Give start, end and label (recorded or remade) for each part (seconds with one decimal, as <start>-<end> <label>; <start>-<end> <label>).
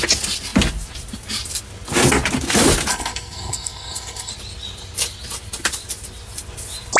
0.0-2.9 recorded; 2.9-4.3 remade; 4.3-7.0 recorded